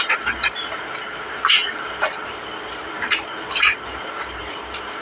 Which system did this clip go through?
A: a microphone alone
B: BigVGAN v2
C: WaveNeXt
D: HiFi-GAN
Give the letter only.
B